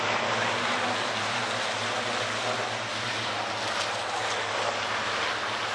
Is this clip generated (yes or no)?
no